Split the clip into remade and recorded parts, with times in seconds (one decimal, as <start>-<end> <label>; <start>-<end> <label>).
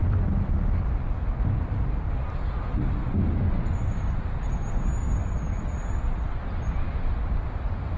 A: 0.0-3.0 recorded; 3.0-4.5 remade; 4.5-5.0 recorded; 5.0-6.5 remade; 6.5-8.0 recorded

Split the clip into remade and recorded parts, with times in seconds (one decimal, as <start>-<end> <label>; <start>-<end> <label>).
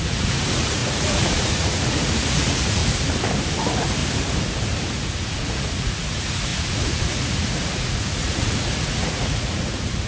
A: 0.0-2.8 remade; 2.8-3.6 recorded; 3.6-4.0 remade; 4.0-4.9 recorded; 4.9-10.1 remade